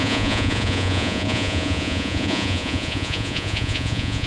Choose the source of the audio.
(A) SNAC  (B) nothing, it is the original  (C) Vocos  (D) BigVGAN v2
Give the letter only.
C